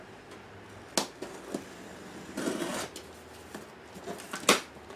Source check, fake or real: real